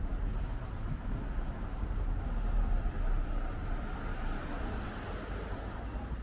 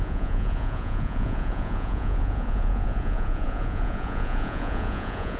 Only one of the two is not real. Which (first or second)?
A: second